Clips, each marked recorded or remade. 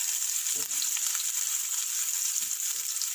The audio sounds remade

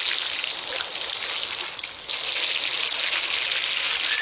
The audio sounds recorded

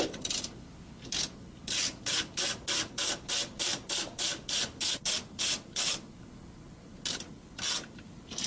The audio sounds recorded